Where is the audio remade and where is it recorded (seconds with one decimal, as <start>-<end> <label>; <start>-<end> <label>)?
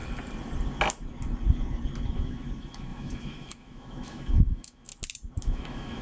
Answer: 0.0-2.1 recorded; 2.1-4.9 remade; 4.9-5.4 recorded; 5.4-6.0 remade